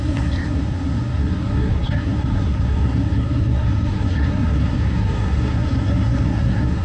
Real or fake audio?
fake